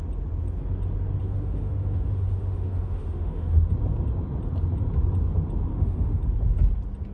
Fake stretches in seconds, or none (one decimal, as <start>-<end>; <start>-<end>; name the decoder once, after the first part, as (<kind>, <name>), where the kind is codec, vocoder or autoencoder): 1.2-3.7 (autoencoder, DAC-VAE); 5.7-6.2